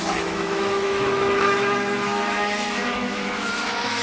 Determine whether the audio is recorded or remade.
remade